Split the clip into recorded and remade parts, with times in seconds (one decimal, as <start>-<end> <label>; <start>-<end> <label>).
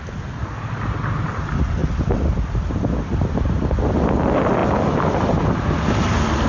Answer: 0.0-6.5 recorded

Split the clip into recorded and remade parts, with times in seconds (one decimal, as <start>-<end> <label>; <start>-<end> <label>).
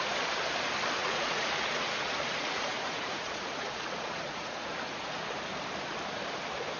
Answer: 0.0-1.0 recorded; 1.0-5.1 remade; 5.1-6.8 recorded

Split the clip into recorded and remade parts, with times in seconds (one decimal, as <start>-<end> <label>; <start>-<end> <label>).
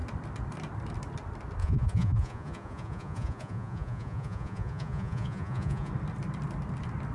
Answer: 0.0-1.6 recorded; 1.6-5.9 remade; 5.9-7.1 recorded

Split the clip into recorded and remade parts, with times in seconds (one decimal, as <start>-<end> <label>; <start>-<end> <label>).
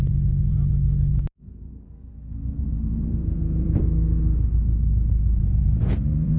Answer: 0.0-0.5 remade; 0.5-1.3 recorded; 1.3-3.8 remade; 3.8-5.4 recorded; 5.4-6.4 remade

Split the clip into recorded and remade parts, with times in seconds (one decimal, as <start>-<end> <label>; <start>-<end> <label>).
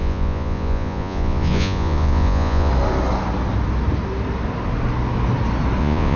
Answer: 0.0-2.7 remade; 2.7-5.8 recorded; 5.8-6.2 remade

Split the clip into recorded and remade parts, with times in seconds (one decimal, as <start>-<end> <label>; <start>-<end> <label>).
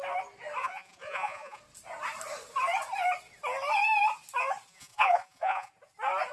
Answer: 0.0-0.6 recorded; 0.6-1.6 remade; 1.6-4.7 recorded; 4.7-5.7 remade; 5.7-6.3 recorded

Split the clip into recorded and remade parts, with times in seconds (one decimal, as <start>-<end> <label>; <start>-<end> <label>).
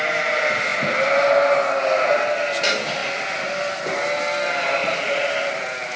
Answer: 0.0-4.8 recorded; 4.8-5.3 remade; 5.3-6.0 recorded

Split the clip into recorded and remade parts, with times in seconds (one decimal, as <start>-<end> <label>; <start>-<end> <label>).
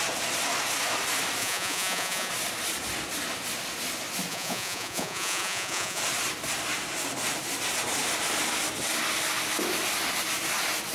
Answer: 0.0-1.4 recorded; 1.4-2.3 remade; 2.3-4.3 recorded; 4.3-6.0 remade; 6.0-10.9 recorded